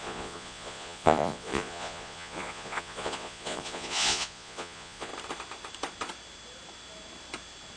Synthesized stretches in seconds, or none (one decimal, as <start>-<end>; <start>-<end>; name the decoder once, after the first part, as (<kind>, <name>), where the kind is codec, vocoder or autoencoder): 0.0-5.1 (vocoder, Vocos)